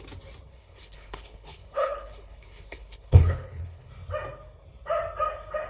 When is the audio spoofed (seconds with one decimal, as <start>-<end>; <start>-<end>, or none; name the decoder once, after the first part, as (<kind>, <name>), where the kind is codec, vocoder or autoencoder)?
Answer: 0.5-3.9 (codec, HILCodec)